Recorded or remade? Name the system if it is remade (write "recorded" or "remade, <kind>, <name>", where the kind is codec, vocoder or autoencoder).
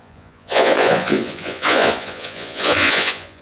remade, vocoder, Vocos